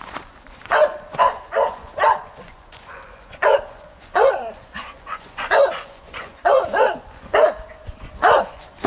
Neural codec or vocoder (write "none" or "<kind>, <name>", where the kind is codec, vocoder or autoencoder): vocoder, Vocos